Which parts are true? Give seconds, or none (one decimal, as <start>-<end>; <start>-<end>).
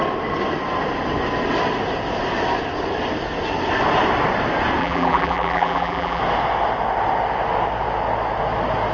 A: 0.0-4.8; 6.2-8.9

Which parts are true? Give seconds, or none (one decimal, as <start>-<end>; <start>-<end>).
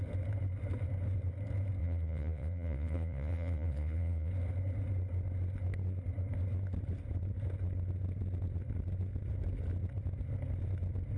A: 0.0-1.8; 4.3-11.2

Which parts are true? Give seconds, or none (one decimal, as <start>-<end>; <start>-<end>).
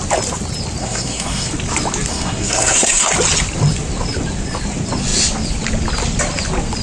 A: 0.0-0.8; 1.5-2.1; 3.1-6.8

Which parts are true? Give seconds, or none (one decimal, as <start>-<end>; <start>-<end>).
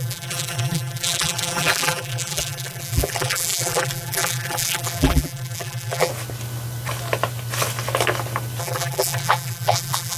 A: 6.1-8.6